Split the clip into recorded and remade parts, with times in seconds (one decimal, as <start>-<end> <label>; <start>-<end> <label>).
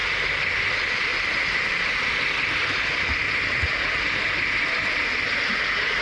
0.0-6.0 recorded